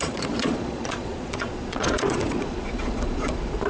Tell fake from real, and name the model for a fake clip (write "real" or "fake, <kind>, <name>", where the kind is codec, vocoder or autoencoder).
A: fake, vocoder, Vocos